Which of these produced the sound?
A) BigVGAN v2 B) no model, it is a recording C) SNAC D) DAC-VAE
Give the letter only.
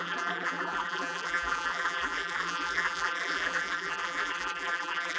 A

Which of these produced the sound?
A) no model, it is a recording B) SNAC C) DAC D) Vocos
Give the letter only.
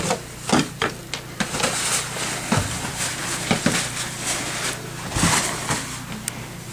A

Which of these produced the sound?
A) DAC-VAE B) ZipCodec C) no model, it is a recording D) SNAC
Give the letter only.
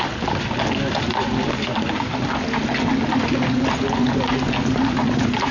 C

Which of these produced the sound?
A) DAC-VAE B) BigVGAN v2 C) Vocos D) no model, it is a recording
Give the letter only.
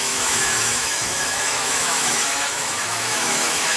A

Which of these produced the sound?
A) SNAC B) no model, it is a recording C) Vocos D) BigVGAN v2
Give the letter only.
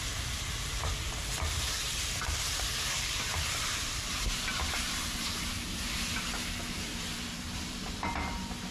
D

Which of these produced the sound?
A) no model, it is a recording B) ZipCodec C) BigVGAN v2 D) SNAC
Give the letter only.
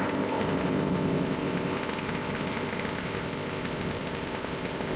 B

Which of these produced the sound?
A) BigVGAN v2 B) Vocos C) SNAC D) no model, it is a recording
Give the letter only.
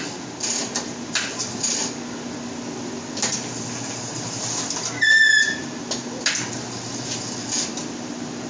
D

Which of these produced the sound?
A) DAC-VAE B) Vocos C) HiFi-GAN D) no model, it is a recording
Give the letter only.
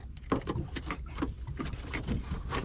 D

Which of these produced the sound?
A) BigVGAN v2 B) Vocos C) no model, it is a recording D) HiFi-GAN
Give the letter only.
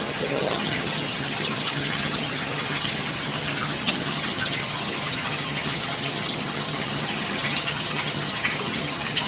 D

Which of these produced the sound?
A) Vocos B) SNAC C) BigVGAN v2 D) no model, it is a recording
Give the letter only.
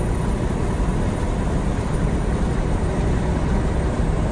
D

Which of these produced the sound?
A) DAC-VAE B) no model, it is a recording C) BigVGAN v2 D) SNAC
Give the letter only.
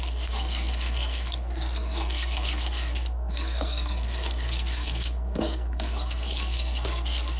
D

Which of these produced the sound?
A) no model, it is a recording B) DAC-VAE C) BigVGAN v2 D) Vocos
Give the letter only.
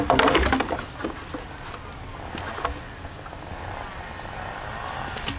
A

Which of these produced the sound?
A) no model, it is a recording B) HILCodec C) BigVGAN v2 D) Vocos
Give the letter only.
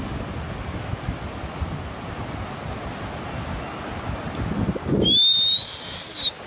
A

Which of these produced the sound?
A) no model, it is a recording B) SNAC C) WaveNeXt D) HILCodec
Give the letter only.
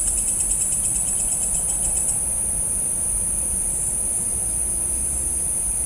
A